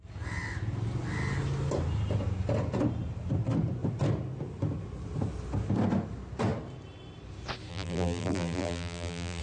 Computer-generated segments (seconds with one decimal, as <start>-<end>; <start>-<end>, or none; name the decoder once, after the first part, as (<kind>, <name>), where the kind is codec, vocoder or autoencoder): 7.7-9.4 (vocoder, BigVGAN v2)